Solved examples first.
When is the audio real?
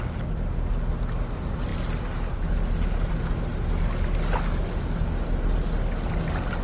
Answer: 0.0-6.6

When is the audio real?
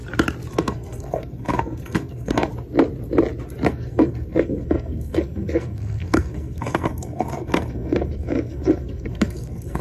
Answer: 0.0-0.5; 2.5-3.7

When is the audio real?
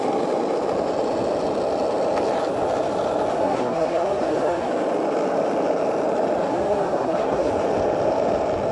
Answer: 0.0-3.3; 4.7-6.5; 7.5-8.7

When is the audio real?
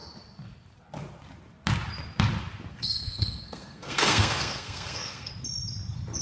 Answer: 0.0-2.7; 5.3-6.2